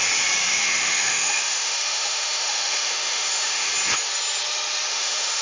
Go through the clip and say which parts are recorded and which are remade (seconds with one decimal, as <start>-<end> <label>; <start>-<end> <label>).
0.0-0.5 recorded; 0.5-3.7 remade; 3.7-4.9 recorded; 4.9-5.4 remade